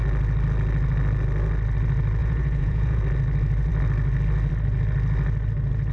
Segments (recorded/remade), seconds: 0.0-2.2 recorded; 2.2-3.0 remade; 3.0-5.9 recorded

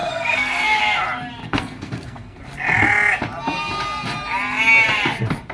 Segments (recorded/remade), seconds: 0.0-0.8 remade; 0.8-1.4 recorded; 1.4-2.4 remade; 2.4-5.5 recorded

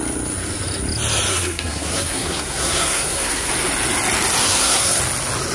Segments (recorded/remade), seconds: 0.0-1.3 recorded; 1.3-3.5 remade; 3.5-4.4 recorded; 4.4-5.0 remade; 5.0-5.5 recorded